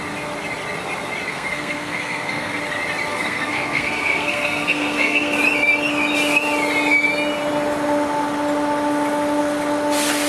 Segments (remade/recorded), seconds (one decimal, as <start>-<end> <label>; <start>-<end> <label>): 0.0-1.3 recorded; 1.3-2.6 remade; 2.6-3.1 recorded; 3.1-5.4 remade; 5.4-10.3 recorded